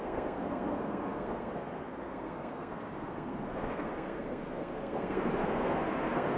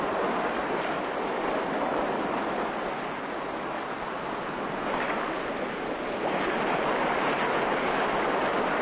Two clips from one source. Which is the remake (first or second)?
first